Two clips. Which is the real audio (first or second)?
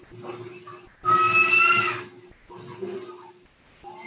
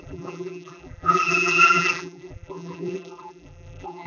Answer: first